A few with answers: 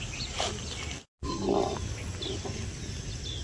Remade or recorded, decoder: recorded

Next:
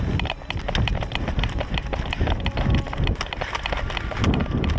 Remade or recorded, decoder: recorded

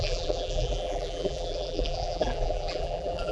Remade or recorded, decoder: remade, vocoder, BigVGAN v2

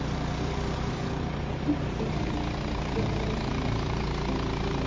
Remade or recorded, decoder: remade, vocoder, BigVGAN v2